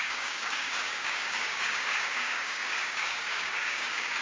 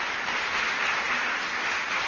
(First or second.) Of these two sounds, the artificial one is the first